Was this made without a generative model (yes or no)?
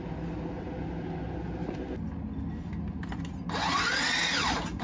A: yes